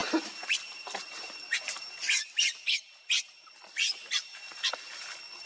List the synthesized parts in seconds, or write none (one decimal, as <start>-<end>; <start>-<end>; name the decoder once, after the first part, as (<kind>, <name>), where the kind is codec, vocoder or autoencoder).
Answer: none